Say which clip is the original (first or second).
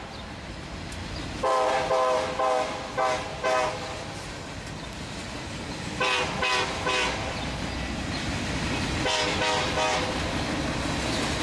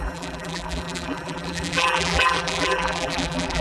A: first